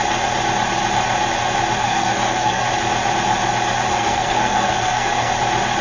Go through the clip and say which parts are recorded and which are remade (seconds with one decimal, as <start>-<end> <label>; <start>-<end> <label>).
0.0-1.8 recorded; 1.8-2.6 remade; 2.6-3.9 recorded; 3.9-5.3 remade; 5.3-5.8 recorded